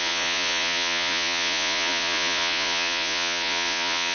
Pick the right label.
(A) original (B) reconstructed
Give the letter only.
B